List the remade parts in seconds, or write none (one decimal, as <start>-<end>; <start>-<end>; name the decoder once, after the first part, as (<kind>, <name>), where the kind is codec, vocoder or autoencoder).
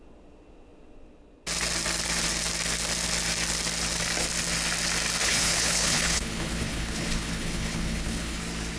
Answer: 5.2-8.4 (codec, HILCodec)